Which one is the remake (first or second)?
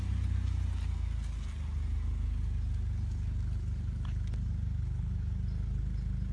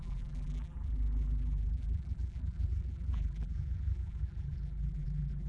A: second